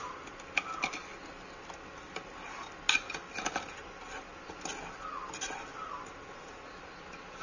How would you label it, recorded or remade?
recorded